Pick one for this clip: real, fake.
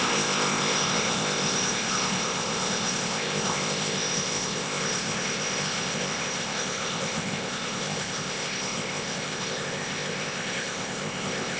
fake